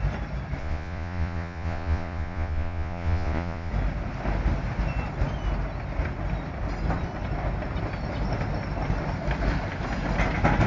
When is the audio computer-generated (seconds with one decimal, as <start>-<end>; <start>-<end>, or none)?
0.6-3.7